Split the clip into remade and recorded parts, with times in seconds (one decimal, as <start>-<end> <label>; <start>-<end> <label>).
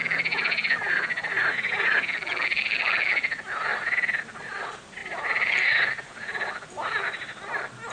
0.0-7.9 recorded